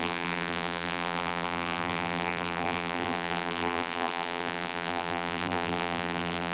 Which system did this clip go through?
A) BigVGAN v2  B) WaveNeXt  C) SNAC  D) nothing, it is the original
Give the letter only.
A